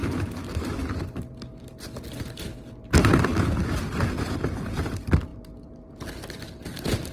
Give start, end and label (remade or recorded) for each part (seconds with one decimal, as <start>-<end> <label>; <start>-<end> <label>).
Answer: 0.0-2.8 recorded; 2.8-3.3 remade; 3.3-4.2 recorded; 4.2-7.1 remade